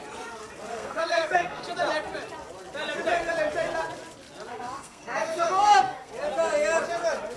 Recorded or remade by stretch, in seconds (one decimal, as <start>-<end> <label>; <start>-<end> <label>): 0.0-0.7 recorded; 0.7-1.6 remade; 1.6-4.5 recorded; 4.5-6.1 remade; 6.1-7.4 recorded